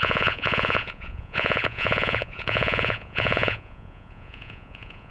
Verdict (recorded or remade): remade